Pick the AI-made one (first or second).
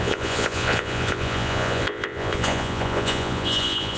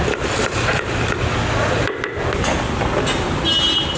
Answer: first